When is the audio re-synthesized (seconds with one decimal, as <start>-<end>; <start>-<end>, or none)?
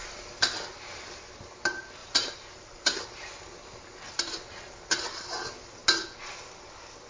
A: 2.0-3.0